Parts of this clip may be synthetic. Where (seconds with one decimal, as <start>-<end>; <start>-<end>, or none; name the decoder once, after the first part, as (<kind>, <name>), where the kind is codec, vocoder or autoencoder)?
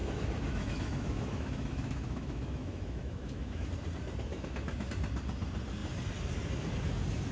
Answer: 0.0-3.7 (autoencoder, DAC-VAE); 4.3-4.9